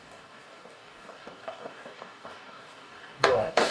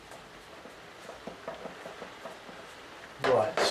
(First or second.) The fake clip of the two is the first